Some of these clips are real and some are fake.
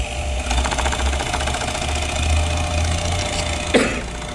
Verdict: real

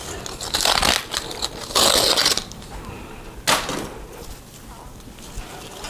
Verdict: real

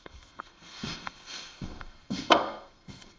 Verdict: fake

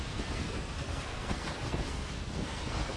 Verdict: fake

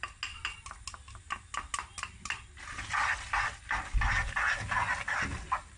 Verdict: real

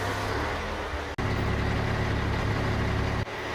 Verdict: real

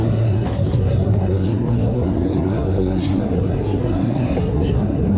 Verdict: fake